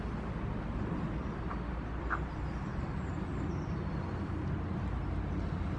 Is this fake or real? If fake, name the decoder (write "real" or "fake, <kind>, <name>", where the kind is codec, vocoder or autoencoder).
real